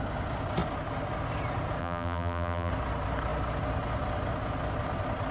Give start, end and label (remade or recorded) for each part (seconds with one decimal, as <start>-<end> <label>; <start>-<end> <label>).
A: 0.0-1.8 recorded; 1.8-2.7 remade; 2.7-5.3 recorded